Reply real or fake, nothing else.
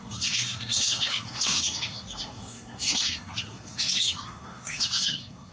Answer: fake